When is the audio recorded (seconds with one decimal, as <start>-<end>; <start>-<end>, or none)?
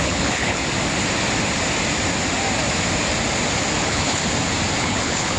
0.6-3.8; 4.2-4.8